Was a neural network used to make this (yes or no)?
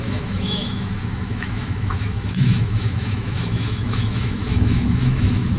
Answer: yes